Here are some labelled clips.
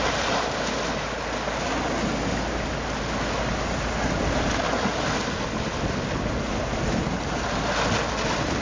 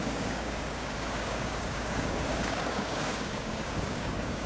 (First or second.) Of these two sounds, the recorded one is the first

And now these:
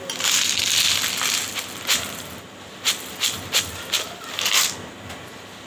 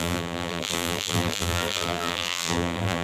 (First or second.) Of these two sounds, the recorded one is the first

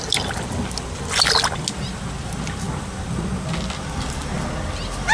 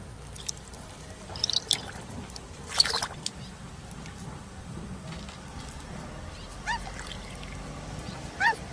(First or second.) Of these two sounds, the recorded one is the first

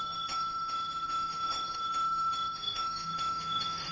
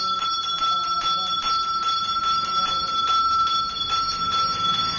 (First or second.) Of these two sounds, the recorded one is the second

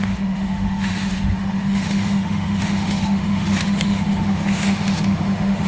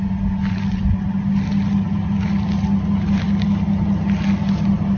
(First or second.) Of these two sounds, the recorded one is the second